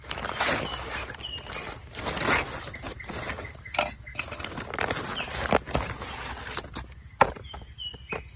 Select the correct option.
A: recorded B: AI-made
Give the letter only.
A